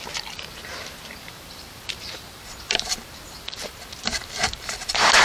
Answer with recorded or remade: remade